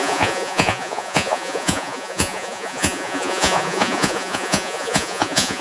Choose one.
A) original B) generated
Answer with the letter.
B